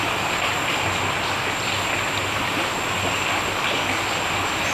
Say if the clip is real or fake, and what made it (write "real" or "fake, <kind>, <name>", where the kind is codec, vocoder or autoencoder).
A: real